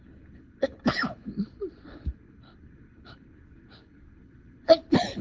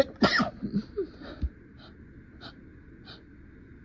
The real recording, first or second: second